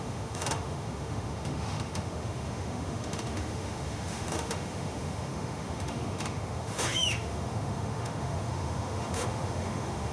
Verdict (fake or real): fake